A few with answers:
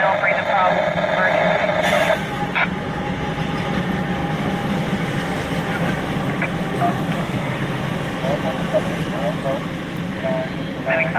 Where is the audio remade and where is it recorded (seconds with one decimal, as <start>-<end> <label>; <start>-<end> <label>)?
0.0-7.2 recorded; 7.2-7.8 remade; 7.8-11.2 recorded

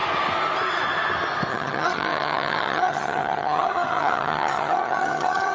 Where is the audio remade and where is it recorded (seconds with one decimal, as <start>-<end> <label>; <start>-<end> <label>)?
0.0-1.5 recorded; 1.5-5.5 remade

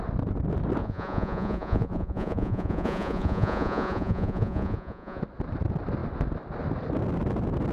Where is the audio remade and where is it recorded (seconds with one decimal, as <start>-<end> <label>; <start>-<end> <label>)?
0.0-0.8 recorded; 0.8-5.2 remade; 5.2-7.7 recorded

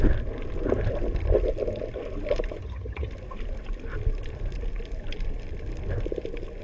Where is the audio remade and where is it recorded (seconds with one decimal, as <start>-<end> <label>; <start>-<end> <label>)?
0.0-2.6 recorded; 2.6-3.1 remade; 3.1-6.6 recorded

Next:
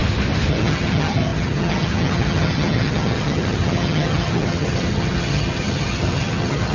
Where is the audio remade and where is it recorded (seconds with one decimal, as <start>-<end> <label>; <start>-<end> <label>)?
0.0-0.5 recorded; 0.5-6.7 remade

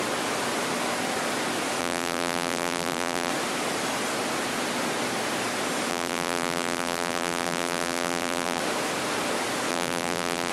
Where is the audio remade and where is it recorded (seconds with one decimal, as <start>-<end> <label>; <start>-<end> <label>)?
0.0-1.8 recorded; 1.8-3.3 remade; 3.3-5.9 recorded; 5.9-8.6 remade; 8.6-9.7 recorded; 9.7-10.5 remade

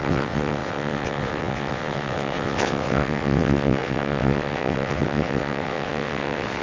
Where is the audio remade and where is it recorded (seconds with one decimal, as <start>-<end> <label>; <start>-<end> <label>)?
0.0-6.6 remade